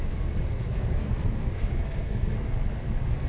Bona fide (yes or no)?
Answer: no